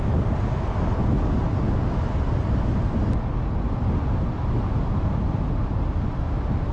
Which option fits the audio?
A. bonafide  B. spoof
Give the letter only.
A